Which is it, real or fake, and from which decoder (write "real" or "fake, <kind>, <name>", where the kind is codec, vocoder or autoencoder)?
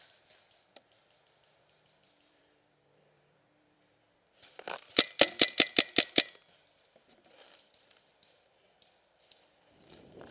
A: fake, vocoder, BigVGAN v2